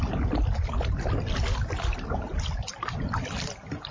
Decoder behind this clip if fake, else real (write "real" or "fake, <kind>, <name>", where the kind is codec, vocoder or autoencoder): real